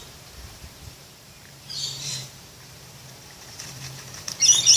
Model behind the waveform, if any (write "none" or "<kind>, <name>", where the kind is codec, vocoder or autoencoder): vocoder, BigVGAN v2